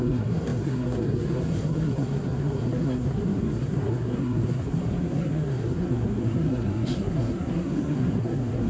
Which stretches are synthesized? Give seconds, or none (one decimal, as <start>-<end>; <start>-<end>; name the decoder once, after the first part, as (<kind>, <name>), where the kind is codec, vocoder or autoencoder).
0.0-8.7 (codec, SNAC)